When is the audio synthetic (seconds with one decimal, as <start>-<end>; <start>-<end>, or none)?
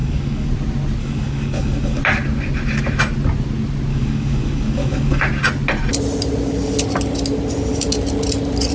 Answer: 0.0-0.5; 1.0-2.0; 3.9-5.2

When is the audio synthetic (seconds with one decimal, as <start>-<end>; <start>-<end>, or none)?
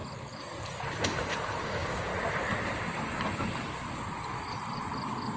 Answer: 1.6-2.1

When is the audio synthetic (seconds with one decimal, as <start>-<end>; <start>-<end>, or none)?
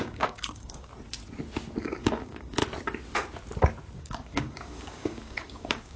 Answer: 0.0-0.9; 1.8-2.6; 4.0-6.0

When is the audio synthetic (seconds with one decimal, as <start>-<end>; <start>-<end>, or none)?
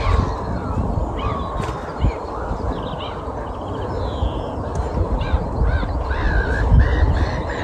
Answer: none